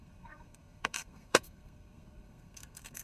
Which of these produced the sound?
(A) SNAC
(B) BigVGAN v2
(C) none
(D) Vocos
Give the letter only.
A